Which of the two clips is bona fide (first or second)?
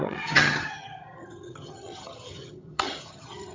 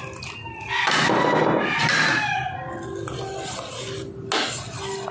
second